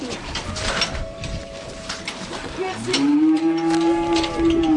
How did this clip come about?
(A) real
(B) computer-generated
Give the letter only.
B